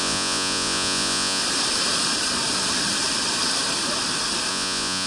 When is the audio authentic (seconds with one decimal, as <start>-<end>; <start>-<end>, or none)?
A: 1.4-4.5